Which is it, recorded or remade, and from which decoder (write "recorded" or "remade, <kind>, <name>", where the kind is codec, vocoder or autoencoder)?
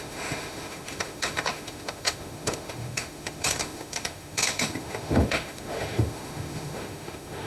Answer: remade, autoencoder, DAC-VAE